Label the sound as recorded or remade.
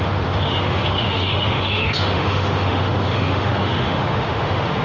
remade